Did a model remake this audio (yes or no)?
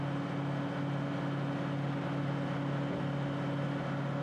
no